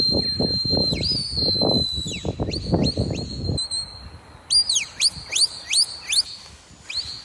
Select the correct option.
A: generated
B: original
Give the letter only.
B